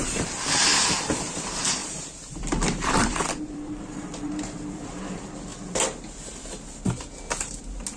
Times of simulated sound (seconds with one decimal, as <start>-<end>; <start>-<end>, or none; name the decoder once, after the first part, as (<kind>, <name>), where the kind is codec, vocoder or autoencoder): 0.0-0.7 (vocoder, BigVGAN v2); 1.2-5.5

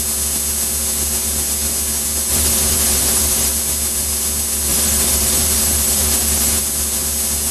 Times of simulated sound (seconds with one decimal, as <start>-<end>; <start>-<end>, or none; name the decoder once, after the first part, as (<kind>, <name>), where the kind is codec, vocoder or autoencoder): 2.3-3.5 (vocoder, BigVGAN v2); 4.7-6.6

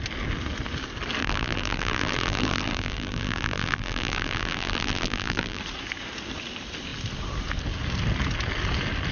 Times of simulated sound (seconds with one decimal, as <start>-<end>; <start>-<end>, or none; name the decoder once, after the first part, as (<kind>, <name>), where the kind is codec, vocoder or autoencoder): 1.2-5.6 (vocoder, BigVGAN v2)

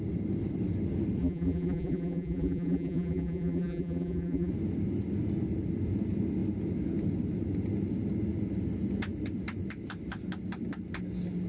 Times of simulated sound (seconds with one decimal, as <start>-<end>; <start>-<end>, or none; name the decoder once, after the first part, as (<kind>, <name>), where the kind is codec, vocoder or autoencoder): 1.2-4.5 (vocoder, BigVGAN v2)